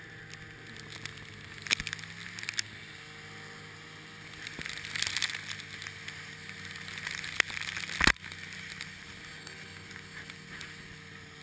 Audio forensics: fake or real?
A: real